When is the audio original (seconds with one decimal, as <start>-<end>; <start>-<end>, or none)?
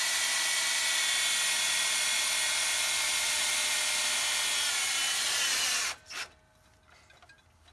0.0-7.7